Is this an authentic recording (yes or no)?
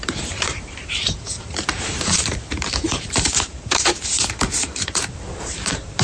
no